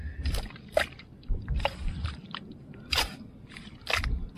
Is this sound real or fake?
real